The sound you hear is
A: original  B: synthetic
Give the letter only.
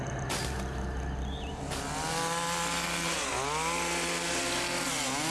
A